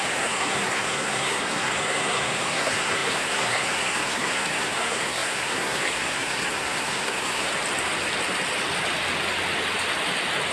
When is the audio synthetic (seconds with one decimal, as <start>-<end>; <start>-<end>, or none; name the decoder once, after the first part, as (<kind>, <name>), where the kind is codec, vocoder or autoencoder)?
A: 0.0-7.5 (codec, SNAC)